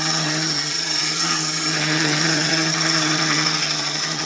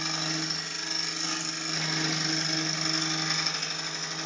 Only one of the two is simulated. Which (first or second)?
first